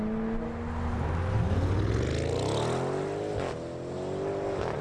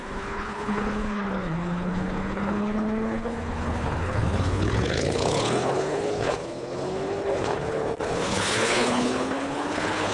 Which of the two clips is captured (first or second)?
first